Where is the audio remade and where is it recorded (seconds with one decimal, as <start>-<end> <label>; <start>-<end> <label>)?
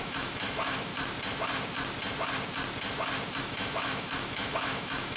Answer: 0.0-0.9 remade; 0.9-3.4 recorded; 3.4-5.2 remade